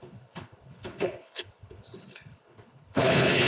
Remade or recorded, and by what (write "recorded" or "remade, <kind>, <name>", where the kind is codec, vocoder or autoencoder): remade, codec, HILCodec